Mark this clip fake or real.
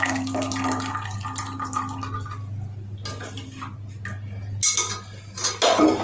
real